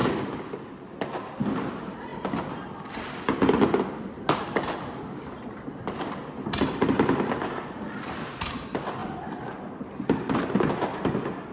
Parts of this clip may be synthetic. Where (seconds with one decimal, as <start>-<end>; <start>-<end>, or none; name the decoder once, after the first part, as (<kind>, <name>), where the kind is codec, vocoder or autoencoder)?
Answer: none